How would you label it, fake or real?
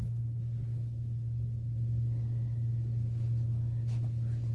real